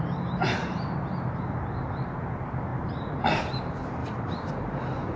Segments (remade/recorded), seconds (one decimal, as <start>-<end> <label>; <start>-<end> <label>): 0.0-5.2 remade